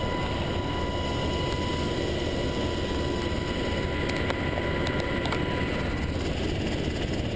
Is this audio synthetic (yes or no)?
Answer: no